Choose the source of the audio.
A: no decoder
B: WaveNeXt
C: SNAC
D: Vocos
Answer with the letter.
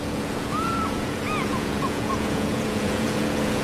D